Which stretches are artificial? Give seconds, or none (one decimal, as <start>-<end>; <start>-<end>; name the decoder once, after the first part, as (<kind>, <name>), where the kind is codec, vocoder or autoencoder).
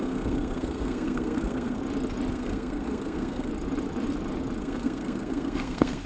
0.0-1.8 (codec, SNAC); 2.3-3.5; 4.6-6.1